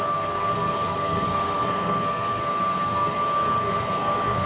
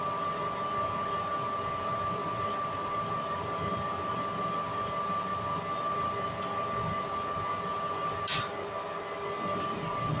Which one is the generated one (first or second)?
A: first